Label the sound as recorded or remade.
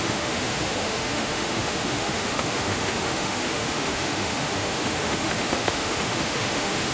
remade